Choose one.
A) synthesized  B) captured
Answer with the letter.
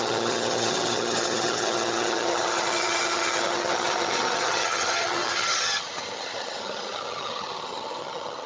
A